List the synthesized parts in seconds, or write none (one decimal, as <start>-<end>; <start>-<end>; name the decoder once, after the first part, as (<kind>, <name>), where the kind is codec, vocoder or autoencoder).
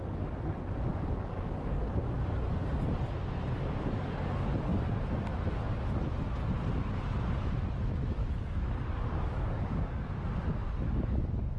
0.9-1.8 (codec, DAC); 8.2-10.2; 10.6-11.2